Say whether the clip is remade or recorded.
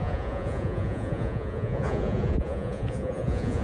remade